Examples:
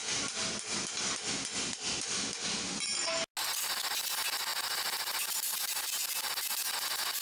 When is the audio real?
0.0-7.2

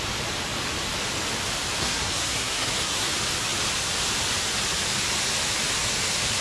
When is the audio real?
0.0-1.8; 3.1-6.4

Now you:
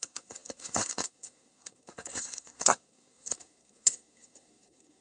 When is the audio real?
none

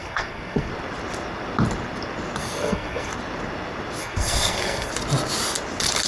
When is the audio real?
0.7-2.4; 3.1-4.0; 4.9-6.1

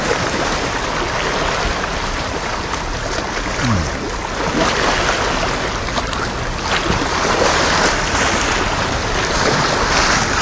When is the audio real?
0.0-10.4

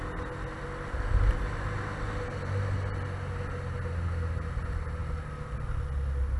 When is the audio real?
0.0-6.4